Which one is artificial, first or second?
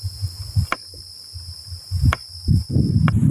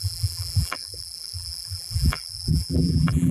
second